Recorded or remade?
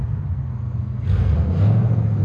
remade